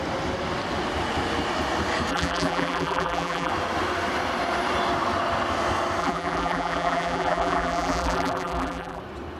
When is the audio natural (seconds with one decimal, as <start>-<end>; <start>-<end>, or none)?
0.0-2.1; 3.5-6.0; 9.0-9.4